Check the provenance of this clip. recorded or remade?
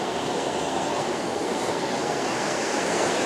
remade